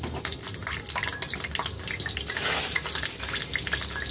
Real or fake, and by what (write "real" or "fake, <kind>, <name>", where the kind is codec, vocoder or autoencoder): real